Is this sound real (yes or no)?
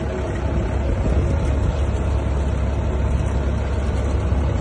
yes